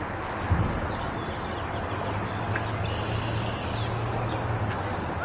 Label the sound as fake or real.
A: real